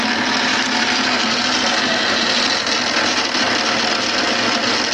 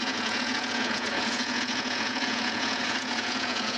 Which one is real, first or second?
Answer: first